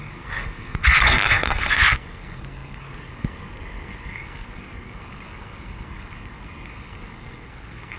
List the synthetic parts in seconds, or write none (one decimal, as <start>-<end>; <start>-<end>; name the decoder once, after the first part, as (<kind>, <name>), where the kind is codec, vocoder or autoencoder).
0.0-8.0 (codec, SNAC)